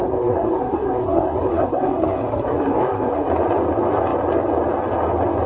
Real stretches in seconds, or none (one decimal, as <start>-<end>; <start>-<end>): 3.3-5.5